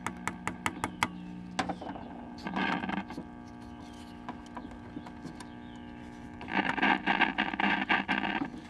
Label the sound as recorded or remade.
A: recorded